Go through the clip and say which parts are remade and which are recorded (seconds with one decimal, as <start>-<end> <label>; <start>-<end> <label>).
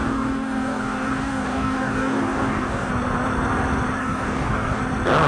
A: 0.0-2.9 remade; 2.9-4.0 recorded; 4.0-4.8 remade; 4.8-5.3 recorded